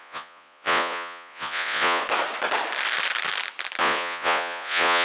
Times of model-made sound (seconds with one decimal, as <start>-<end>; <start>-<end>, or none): 0.0-2.0; 3.8-5.0